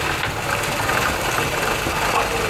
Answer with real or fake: real